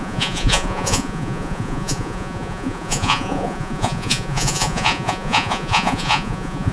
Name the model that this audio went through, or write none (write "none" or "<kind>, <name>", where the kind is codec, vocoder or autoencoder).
vocoder, Vocos